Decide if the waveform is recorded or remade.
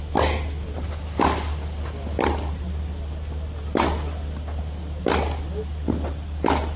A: recorded